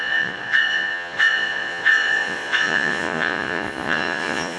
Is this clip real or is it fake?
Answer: fake